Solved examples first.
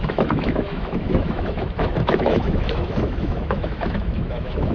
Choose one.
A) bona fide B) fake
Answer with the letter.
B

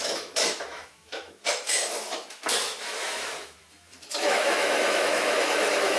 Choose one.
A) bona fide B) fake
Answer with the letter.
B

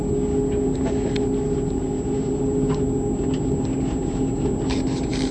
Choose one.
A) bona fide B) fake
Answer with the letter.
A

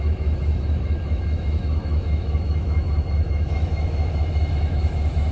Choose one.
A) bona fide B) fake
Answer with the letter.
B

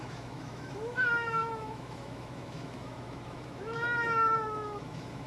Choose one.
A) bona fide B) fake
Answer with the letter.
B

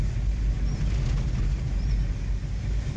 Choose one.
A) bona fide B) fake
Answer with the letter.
A